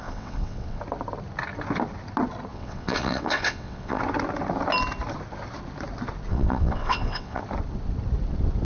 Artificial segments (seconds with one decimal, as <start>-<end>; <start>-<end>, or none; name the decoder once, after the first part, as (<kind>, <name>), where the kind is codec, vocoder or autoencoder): 0.0-0.8 (vocoder, WaveNeXt); 2.5-4.0; 6.3-7.4